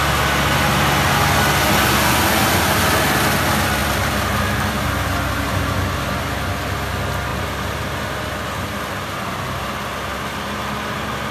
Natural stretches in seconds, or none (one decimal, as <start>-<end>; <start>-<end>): 0.0-11.3